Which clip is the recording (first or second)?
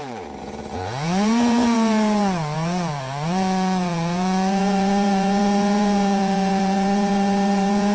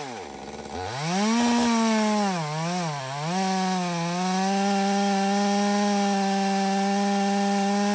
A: second